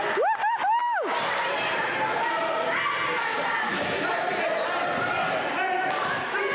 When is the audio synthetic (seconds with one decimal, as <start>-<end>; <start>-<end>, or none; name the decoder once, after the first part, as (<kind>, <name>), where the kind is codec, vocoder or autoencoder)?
none